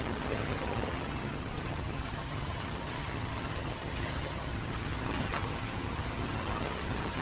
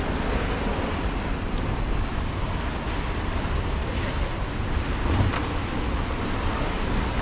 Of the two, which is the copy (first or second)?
first